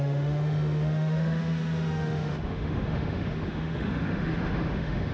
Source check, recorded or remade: remade